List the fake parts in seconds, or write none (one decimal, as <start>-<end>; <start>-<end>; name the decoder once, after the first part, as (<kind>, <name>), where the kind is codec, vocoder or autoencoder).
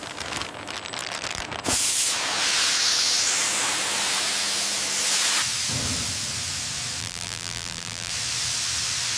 7.0-8.1 (vocoder, BigVGAN v2)